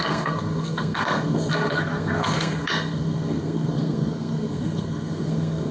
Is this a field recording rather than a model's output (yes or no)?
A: no